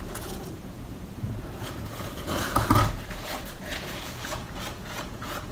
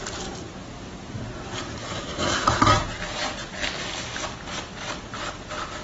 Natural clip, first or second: second